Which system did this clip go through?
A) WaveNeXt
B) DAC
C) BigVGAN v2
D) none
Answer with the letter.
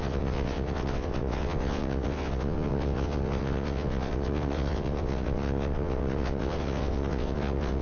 A